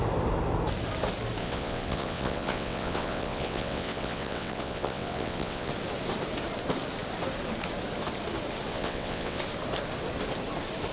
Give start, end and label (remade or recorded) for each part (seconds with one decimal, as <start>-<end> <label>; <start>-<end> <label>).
0.0-1.4 recorded; 1.4-5.7 remade; 5.7-8.7 recorded; 8.7-9.4 remade; 9.4-10.9 recorded